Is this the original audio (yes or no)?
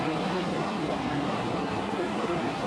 no